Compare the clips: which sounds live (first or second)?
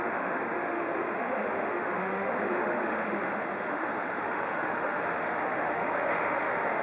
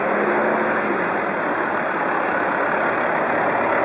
second